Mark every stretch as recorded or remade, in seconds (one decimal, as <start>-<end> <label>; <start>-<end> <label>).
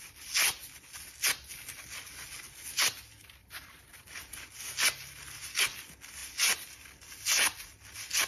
0.0-3.4 recorded; 3.4-4.2 remade; 4.2-8.3 recorded